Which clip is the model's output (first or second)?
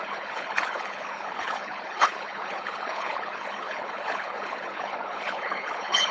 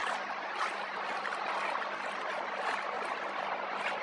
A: first